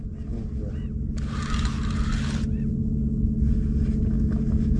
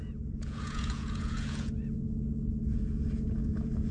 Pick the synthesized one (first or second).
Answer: second